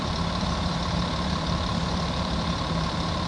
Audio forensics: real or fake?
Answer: fake